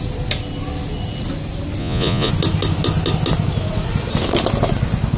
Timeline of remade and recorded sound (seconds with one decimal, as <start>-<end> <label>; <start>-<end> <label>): 0.0-1.8 recorded; 1.8-2.3 remade; 2.3-5.2 recorded